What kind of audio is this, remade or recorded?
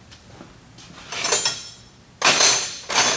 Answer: recorded